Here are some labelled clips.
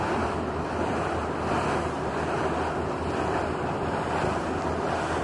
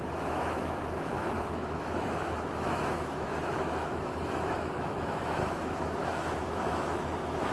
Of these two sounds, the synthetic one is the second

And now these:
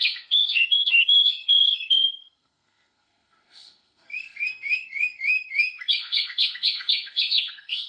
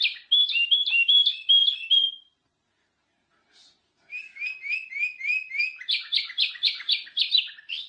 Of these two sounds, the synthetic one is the first